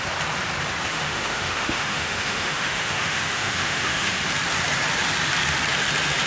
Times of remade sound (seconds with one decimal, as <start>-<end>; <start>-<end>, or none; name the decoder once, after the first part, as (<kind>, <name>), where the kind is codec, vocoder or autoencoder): 0.9-4.2 (autoencoder, DAC-VAE)